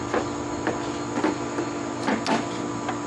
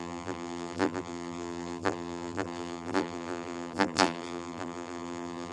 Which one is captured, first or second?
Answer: first